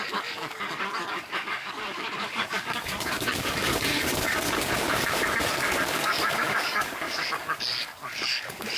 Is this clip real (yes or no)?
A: no